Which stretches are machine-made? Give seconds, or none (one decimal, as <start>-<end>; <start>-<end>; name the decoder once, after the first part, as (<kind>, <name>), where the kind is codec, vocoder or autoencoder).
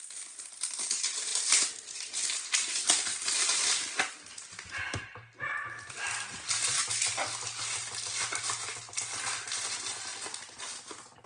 none